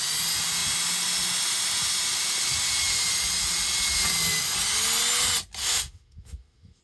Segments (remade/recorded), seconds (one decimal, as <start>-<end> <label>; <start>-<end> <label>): 0.0-5.6 recorded; 5.6-6.8 remade